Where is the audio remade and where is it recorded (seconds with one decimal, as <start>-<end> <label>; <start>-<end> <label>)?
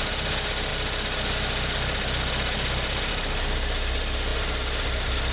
0.0-5.3 recorded